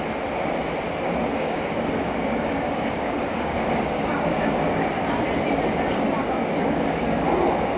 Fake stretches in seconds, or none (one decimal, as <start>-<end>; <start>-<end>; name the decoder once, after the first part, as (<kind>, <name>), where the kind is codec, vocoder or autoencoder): 1.3-4.9 (codec, DAC); 6.2-7.0